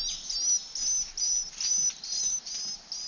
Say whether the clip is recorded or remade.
recorded